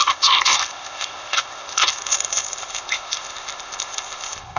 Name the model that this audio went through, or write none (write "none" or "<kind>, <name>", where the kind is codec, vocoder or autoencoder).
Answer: codec, ZipCodec